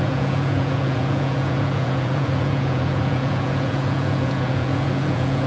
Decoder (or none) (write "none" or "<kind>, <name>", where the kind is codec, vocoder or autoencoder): vocoder, Vocos